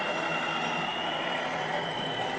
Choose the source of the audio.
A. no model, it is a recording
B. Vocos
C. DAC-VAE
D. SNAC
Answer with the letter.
A